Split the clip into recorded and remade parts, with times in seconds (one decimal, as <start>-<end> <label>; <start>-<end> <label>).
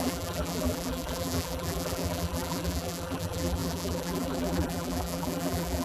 0.0-5.8 remade